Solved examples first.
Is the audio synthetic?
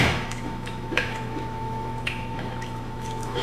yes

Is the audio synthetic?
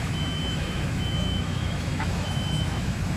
yes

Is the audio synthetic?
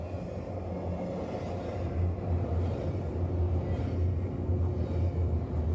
no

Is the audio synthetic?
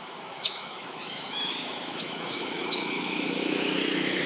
yes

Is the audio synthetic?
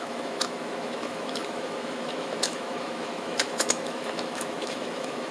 yes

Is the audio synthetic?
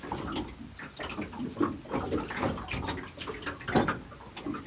no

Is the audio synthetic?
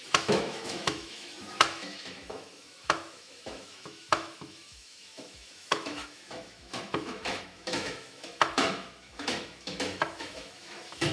yes